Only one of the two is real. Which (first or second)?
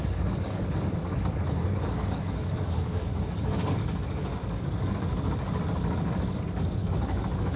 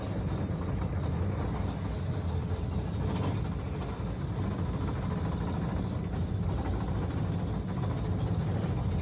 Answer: second